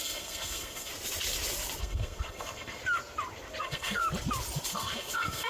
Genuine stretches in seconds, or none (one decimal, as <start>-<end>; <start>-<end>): 0.9-1.8; 2.8-3.6; 4.0-4.7